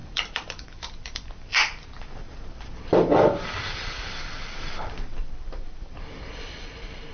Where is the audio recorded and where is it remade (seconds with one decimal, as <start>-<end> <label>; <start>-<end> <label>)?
0.0-7.1 remade